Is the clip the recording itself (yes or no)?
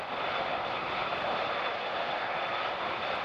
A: yes